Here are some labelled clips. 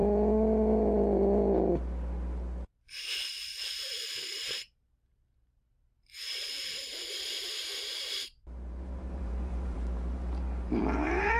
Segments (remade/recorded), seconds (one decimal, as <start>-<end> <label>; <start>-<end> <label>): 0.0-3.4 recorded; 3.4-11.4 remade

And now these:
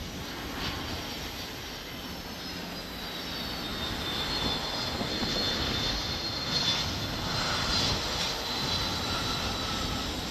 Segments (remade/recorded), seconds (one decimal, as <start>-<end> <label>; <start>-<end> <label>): 0.0-3.7 recorded; 3.7-4.2 remade; 4.2-10.3 recorded

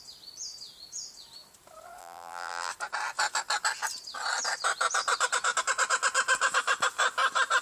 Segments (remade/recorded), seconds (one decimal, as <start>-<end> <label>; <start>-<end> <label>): 0.0-2.0 recorded; 2.0-2.7 remade; 2.7-7.6 recorded

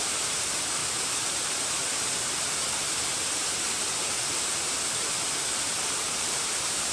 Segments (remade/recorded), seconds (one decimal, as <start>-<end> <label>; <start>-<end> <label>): 0.0-6.9 remade

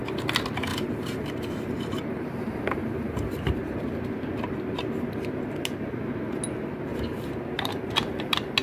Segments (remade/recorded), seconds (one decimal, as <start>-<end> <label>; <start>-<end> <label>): 0.0-0.7 recorded; 0.7-4.8 remade; 4.8-6.9 recorded; 6.9-7.7 remade; 7.7-8.6 recorded

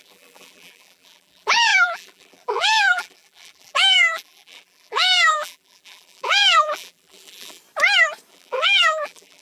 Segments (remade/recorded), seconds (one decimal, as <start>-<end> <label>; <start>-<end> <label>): 0.0-7.6 remade; 7.6-8.3 recorded; 8.3-9.4 remade

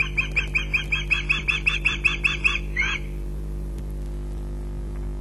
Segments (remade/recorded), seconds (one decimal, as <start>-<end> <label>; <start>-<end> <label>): 0.0-1.4 recorded; 1.4-3.8 remade; 3.8-5.2 recorded

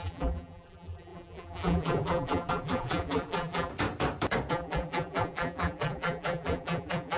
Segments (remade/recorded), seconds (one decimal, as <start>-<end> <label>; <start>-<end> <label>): 0.0-3.7 remade; 3.7-4.5 recorded; 4.5-7.2 remade